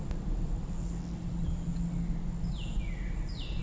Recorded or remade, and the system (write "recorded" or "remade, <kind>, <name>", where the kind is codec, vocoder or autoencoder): recorded